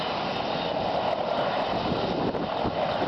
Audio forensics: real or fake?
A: real